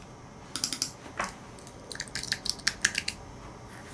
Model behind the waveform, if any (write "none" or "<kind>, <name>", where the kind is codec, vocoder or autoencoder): none